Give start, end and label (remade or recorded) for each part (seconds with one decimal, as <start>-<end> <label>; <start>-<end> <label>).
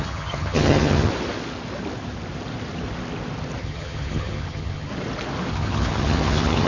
0.0-1.1 remade; 1.1-3.6 recorded; 3.6-4.9 remade; 4.9-5.5 recorded; 5.5-6.7 remade